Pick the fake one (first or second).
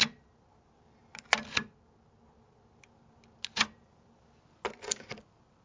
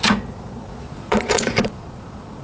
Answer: second